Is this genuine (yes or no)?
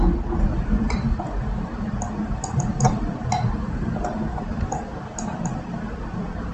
no